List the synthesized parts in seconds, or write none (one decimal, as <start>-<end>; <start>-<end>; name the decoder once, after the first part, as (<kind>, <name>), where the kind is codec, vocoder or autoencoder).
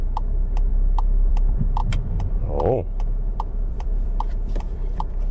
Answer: 0.0-5.3 (vocoder, BigVGAN v2)